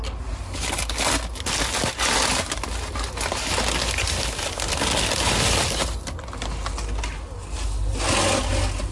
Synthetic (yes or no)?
no